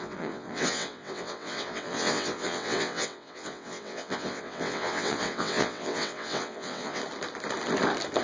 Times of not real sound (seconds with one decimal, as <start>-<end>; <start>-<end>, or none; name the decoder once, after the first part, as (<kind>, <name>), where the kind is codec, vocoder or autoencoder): 0.0-7.0 (vocoder, WaveNeXt)

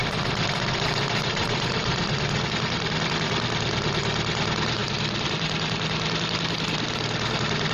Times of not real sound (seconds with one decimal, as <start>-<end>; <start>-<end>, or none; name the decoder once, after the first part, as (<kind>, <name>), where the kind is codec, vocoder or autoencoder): 0.0-2.4 (vocoder, BigVGAN v2)

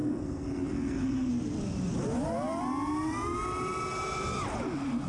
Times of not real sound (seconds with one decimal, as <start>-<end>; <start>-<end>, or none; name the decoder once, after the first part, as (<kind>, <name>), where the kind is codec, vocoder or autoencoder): 0.0-1.3 (codec, SNAC)

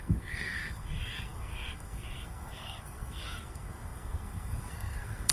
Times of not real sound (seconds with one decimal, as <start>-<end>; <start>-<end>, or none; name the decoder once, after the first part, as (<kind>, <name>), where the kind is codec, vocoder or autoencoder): 0.0-5.3 (codec, SNAC)

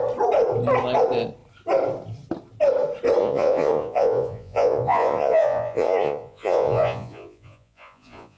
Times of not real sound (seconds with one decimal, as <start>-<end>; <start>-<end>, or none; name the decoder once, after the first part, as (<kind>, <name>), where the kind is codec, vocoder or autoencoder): 3.2-8.4 (vocoder, Vocos)

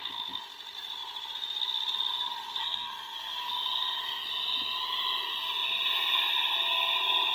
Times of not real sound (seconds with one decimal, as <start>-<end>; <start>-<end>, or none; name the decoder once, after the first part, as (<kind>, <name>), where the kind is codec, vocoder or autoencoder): 2.6-3.5 (codec, SNAC)

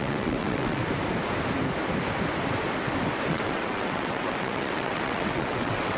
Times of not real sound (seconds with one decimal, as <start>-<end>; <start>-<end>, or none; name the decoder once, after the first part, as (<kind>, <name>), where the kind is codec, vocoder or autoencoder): 0.0-0.8 (vocoder, WaveNeXt); 3.3-6.0